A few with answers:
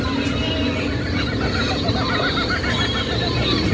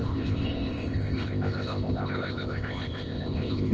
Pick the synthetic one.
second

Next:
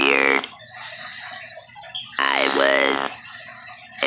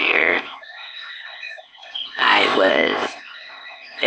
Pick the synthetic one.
second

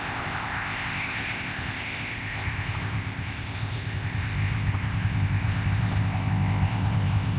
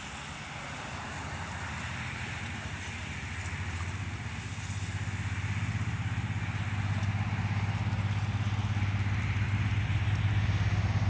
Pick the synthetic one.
first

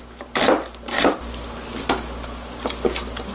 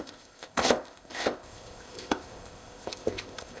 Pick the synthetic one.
second